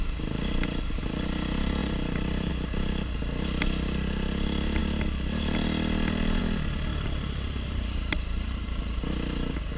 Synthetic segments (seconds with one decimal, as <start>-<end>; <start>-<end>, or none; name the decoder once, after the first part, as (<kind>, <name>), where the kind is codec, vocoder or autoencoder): 1.8-2.5 (vocoder, BigVGAN v2); 6.9-8.8